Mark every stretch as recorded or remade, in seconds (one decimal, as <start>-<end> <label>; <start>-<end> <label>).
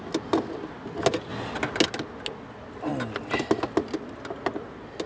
0.0-5.1 recorded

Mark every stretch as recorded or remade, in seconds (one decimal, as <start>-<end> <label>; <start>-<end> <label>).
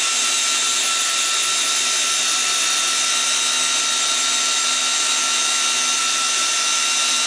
0.0-7.3 recorded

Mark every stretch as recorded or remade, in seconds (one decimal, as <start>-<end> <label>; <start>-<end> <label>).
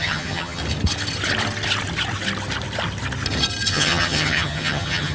0.0-0.6 remade; 0.6-3.7 recorded; 3.7-5.1 remade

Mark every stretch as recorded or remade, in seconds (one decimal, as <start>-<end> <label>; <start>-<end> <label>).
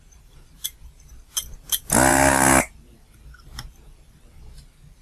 0.0-2.1 recorded; 2.1-2.6 remade; 2.6-5.0 recorded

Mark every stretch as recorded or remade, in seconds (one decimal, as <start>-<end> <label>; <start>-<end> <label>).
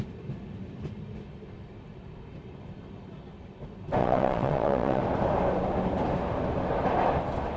0.0-4.0 recorded; 4.0-5.0 remade; 5.0-7.6 recorded